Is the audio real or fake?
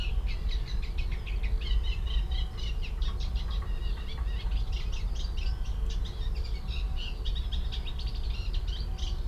real